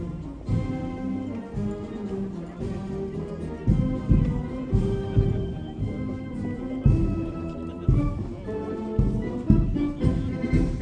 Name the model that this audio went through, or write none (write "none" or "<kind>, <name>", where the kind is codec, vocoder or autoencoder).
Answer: none